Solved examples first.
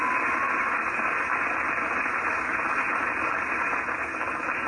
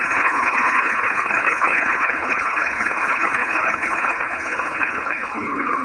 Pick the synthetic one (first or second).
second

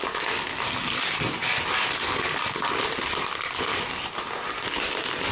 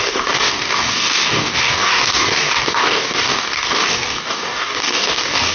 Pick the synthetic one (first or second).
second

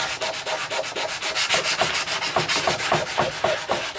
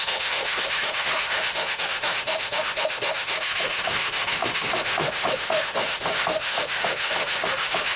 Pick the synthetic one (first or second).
second